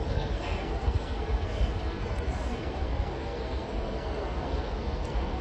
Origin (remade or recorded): remade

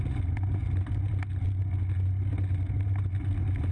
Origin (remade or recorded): recorded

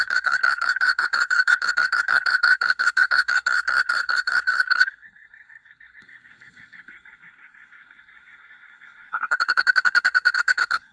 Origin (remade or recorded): remade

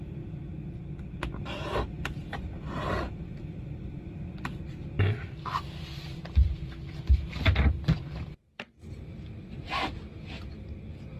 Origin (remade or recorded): recorded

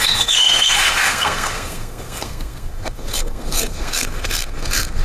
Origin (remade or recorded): remade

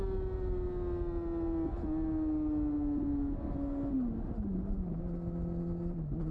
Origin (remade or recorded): recorded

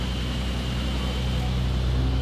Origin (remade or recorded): recorded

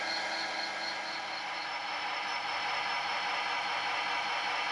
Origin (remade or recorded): recorded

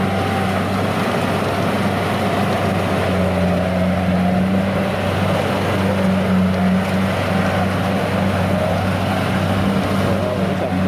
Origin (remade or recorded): recorded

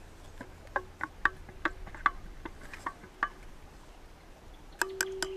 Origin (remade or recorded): recorded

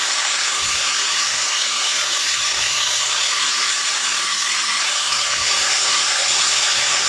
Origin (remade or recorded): remade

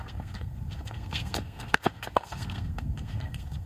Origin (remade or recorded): remade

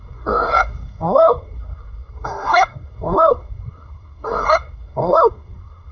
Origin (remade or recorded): remade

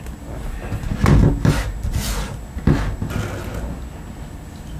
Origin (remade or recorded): recorded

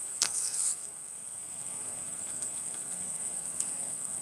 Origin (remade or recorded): remade